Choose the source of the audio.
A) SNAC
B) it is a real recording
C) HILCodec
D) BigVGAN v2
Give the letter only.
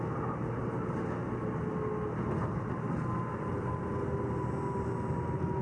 B